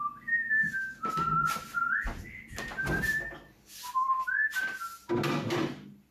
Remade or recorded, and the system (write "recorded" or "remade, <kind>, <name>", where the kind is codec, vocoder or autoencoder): recorded